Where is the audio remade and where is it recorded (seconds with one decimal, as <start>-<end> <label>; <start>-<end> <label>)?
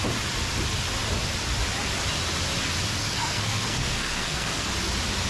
0.0-3.0 recorded; 3.0-4.7 remade; 4.7-5.3 recorded